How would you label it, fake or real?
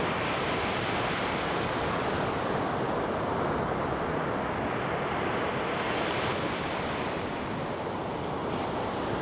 real